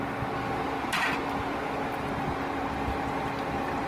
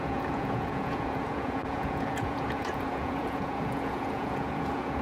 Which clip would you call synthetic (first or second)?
second